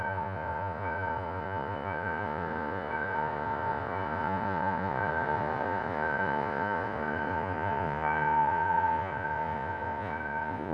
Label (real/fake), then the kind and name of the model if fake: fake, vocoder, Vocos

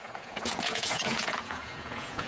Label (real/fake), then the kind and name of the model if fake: fake, vocoder, Vocos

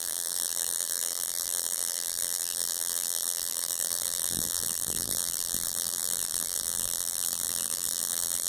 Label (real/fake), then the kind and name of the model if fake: fake, vocoder, BigVGAN v2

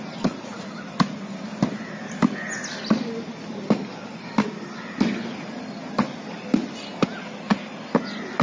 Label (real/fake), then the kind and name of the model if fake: real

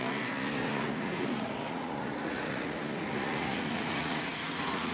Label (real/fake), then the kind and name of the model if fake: fake, vocoder, Vocos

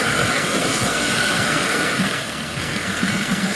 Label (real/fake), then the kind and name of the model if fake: fake, codec, SNAC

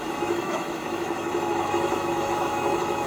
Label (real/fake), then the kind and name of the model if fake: fake, autoencoder, DAC-VAE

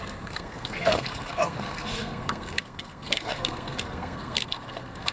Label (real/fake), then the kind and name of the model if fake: fake, codec, SNAC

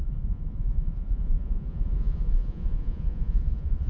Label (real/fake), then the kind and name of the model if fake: fake, vocoder, Vocos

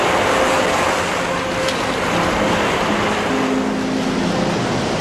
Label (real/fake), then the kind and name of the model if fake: real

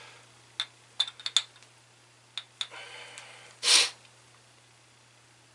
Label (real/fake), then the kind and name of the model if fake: real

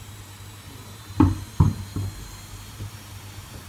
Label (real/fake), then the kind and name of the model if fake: fake, vocoder, BigVGAN v2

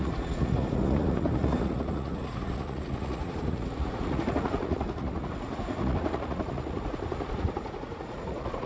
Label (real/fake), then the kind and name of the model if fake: fake, vocoder, Vocos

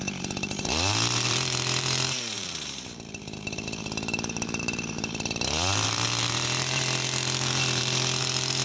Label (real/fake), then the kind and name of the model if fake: fake, vocoder, BigVGAN v2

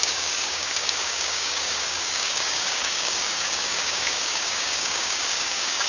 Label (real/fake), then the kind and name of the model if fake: fake, codec, DAC